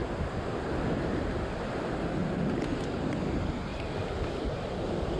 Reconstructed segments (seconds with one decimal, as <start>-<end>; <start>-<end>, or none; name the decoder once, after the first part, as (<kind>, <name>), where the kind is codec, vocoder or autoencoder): none